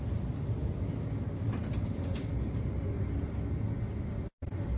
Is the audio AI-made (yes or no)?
no